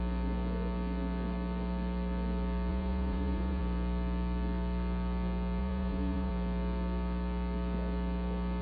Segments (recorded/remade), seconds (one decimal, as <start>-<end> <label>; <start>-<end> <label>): 0.0-2.7 recorded; 2.7-3.6 remade; 3.6-5.6 recorded; 5.6-6.3 remade; 6.3-8.6 recorded